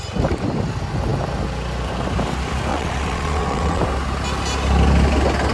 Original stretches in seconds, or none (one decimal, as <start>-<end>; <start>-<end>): 0.0-2.7; 3.8-5.5